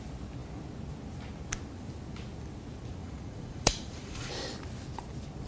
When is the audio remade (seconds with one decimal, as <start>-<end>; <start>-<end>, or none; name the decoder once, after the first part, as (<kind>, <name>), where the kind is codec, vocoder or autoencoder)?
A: 3.0-4.3 (vocoder, Vocos)